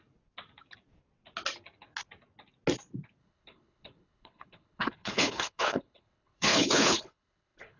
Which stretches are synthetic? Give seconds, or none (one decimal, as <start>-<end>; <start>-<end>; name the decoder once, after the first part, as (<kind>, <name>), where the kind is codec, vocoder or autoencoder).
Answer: 3.2-7.8 (codec, HILCodec)